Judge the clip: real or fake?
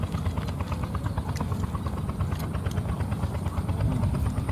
real